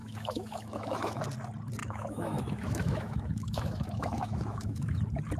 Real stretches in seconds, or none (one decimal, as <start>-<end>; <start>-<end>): 1.2-1.8; 5.0-5.4